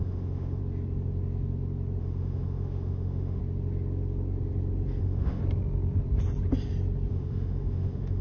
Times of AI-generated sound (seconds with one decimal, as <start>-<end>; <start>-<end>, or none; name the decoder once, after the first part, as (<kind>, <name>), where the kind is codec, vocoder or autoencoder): 0.0-0.6 (autoencoder, DAC-VAE); 2.0-3.4; 5.0-5.4; 7.1-8.2